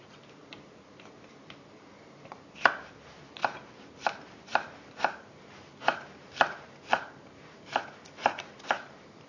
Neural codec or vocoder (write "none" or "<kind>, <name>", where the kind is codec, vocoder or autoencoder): vocoder, BigVGAN v2